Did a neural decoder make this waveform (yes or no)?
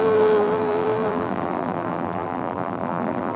yes